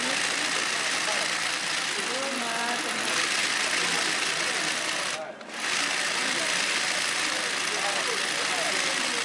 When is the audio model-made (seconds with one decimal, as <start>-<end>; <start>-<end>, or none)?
none